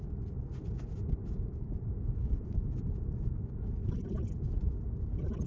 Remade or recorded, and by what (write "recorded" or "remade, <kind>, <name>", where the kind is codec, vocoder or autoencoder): recorded